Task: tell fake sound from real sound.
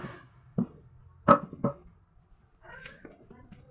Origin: real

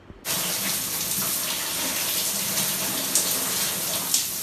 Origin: real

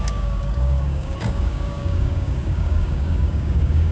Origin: fake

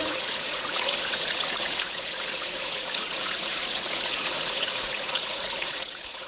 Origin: fake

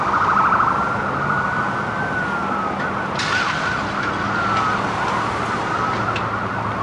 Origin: real